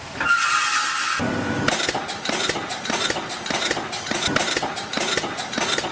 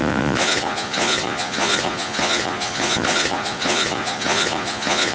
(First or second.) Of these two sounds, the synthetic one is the second